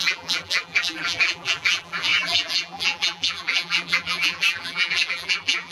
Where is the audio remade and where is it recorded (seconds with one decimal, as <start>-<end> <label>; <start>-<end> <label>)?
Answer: 0.0-5.7 remade